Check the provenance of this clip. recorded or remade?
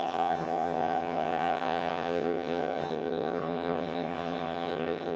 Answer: remade